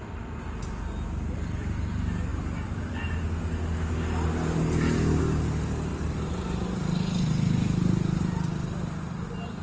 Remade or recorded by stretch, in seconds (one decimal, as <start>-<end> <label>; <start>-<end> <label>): 0.0-9.6 recorded